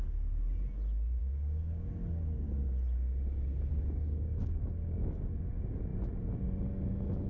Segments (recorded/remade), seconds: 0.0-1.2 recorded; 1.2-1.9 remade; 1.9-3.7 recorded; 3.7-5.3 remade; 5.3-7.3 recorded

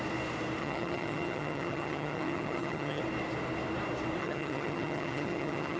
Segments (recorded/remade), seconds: 0.0-0.6 recorded; 0.6-3.0 remade; 3.0-4.2 recorded; 4.2-5.8 remade